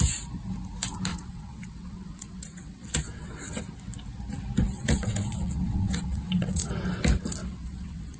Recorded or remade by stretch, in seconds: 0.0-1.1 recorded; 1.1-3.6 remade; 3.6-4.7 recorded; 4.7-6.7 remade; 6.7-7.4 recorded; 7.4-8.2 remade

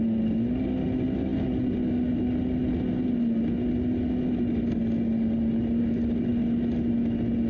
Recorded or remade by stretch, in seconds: 0.0-7.5 recorded

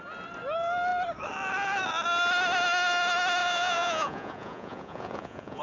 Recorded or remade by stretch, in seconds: 0.0-3.4 recorded; 3.4-5.6 remade

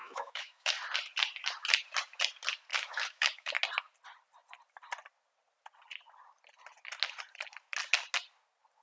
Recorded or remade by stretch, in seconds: 0.0-0.7 remade; 0.7-2.7 recorded; 2.7-3.5 remade; 3.5-8.8 recorded

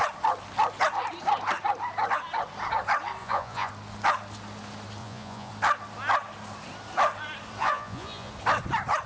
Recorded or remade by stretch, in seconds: 0.0-3.2 recorded; 3.2-3.7 remade; 3.7-5.0 recorded; 5.0-5.5 remade; 5.5-7.6 recorded; 7.6-8.3 remade; 8.3-9.1 recorded

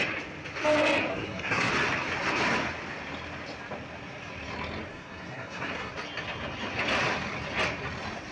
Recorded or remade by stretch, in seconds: 0.0-1.1 recorded; 1.1-1.7 remade; 1.7-4.9 recorded; 4.9-5.9 remade; 5.9-8.3 recorded

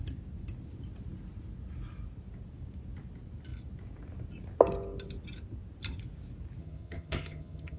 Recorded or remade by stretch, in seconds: 0.0-6.6 recorded; 6.6-7.8 remade